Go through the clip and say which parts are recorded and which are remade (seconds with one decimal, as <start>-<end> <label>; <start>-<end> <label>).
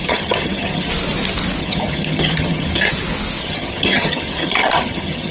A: 0.0-0.9 remade; 0.9-1.6 recorded; 1.6-2.9 remade; 2.9-3.4 recorded; 3.4-5.3 remade